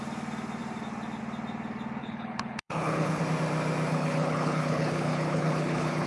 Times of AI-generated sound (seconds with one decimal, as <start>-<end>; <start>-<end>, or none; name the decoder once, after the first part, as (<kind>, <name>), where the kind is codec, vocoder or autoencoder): 2.0-3.2 (codec, HILCodec); 3.9-6.1